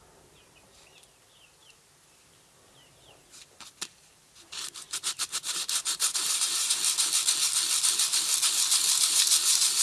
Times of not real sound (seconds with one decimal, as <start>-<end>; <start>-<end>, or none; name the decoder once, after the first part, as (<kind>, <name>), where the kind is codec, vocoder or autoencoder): 1.6-6.7 (vocoder, BigVGAN v2)